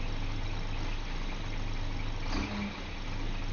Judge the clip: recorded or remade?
recorded